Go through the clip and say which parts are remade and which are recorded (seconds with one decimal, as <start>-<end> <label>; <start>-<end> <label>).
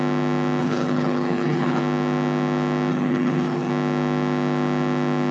0.0-0.6 recorded; 0.6-1.8 remade; 1.8-2.9 recorded; 2.9-3.7 remade; 3.7-5.3 recorded